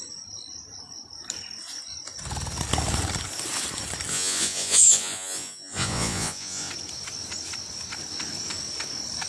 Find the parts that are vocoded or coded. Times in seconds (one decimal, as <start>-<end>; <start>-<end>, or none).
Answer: 4.1-6.7